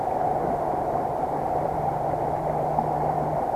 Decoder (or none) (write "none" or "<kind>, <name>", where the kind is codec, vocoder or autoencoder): vocoder, BigVGAN v2